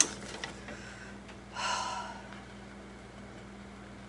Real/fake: real